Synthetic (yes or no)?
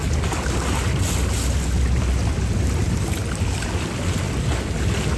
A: no